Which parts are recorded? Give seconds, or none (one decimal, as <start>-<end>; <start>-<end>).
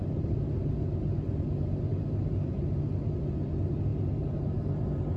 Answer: 0.7-1.9; 2.7-5.2